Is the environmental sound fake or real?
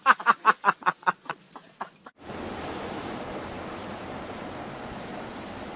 real